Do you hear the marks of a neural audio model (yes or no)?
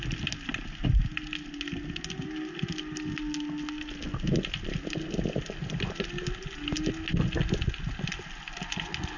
no